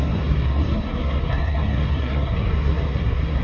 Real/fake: fake